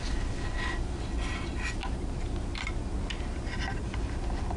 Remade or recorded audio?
recorded